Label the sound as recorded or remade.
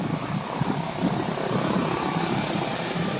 recorded